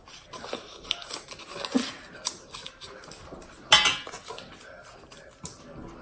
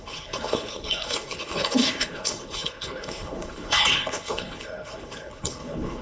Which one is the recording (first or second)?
first